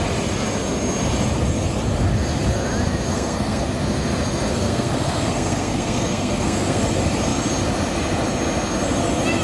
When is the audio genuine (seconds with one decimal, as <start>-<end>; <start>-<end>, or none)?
0.0-3.1; 3.6-4.5; 6.8-9.4